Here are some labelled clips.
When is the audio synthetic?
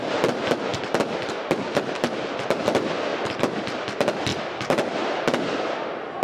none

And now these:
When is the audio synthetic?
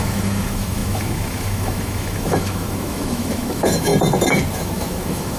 0.0-3.9 (autoencoder, DAC-VAE); 4.5-5.4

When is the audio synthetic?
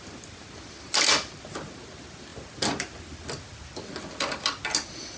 none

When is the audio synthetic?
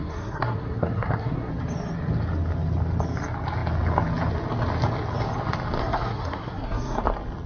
0.0-1.5 (codec, SNAC); 5.8-7.0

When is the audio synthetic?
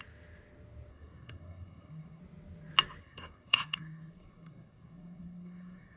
0.9-2.2 (codec, SNAC); 3.0-6.0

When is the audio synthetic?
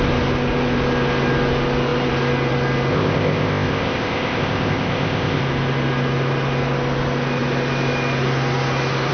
2.9-5.4 (codec, ZipCodec)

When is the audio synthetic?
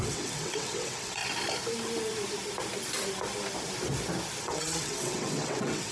0.0-1.2 (vocoder, WaveNeXt); 4.4-5.9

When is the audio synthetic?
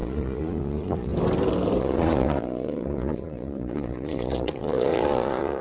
0.0-1.1 (vocoder, Vocos); 1.8-5.6